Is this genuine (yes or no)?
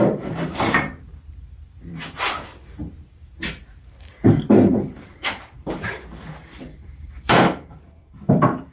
no